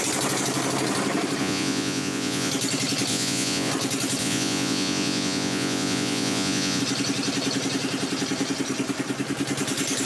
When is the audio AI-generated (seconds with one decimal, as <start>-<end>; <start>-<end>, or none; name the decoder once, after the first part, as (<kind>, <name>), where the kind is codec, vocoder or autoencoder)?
1.4-2.5 (vocoder, Vocos); 3.1-3.7; 4.2-6.8